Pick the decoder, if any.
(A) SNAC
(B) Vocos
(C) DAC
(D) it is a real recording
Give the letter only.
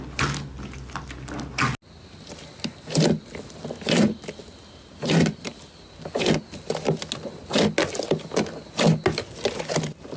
D